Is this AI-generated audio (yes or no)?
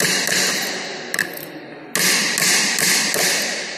no